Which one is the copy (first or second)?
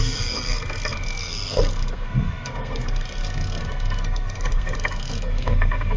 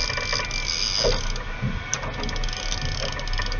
first